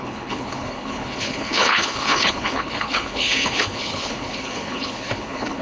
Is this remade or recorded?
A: remade